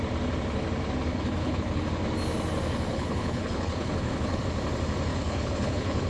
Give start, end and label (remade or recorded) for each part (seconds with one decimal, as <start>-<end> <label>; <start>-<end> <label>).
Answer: 0.0-1.1 recorded; 1.1-1.8 remade; 1.8-2.9 recorded; 2.9-4.4 remade; 4.4-5.1 recorded; 5.1-6.1 remade